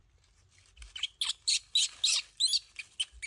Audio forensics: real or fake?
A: real